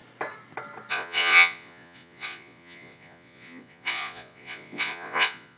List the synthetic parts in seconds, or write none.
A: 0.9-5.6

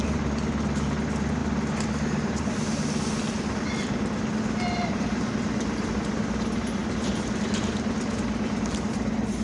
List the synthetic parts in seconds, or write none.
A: none

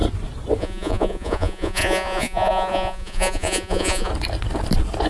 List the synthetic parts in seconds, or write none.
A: 0.6-4.1

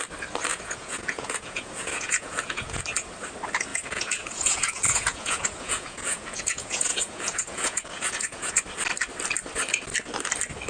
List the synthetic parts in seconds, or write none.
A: 0.5-2.8; 3.7-8.5

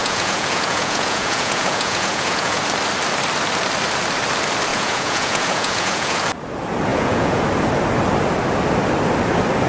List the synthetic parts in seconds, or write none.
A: 0.0-2.6; 4.7-6.2; 6.9-7.4

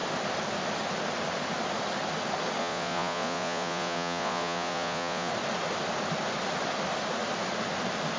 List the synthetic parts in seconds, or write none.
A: 2.6-5.3